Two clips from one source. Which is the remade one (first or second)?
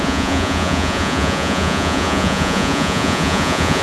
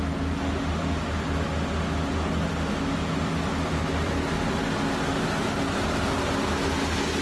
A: first